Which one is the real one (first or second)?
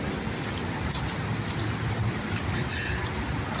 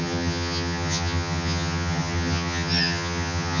first